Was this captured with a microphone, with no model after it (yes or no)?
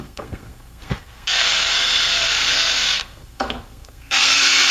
no